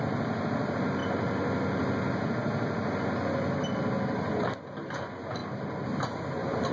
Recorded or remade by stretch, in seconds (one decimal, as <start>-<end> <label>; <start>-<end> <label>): 0.0-6.7 recorded